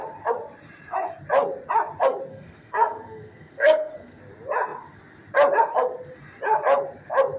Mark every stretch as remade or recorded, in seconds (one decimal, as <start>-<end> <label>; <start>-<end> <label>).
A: 0.0-2.3 recorded; 2.3-4.2 remade; 4.2-7.4 recorded